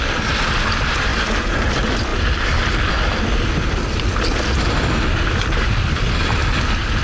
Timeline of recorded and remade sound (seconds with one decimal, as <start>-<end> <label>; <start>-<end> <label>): 0.0-7.0 recorded